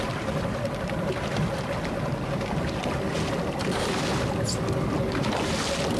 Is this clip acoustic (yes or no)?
yes